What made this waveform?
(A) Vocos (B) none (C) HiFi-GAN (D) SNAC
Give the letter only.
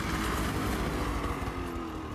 B